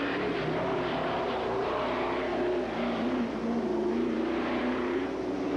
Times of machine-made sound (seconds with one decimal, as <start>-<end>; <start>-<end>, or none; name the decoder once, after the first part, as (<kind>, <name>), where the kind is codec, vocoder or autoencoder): 0.0-2.3 (vocoder, BigVGAN v2); 3.2-5.6